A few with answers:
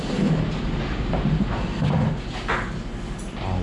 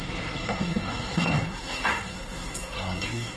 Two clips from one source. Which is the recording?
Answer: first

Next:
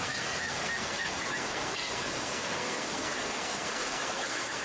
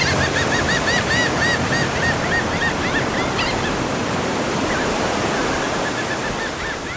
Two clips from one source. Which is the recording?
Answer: second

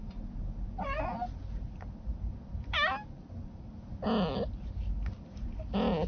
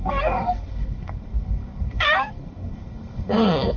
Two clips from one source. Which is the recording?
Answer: first